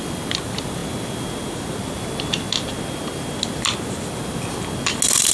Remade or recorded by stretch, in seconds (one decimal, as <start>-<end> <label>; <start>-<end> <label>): 0.0-5.3 recorded